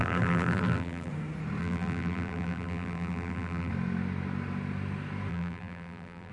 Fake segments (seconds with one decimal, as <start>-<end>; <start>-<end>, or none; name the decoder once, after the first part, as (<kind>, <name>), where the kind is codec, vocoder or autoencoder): 0.0-1.1 (vocoder, BigVGAN v2); 1.6-3.7; 5.3-6.3